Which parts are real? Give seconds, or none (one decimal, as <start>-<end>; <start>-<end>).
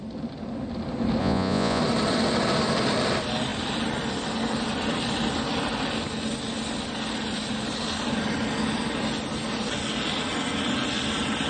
0.0-1.2; 1.8-11.5